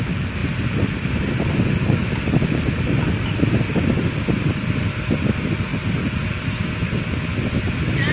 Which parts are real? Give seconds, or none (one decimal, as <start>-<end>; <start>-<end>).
0.0-8.1